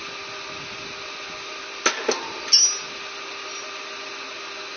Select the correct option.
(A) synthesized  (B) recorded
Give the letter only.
B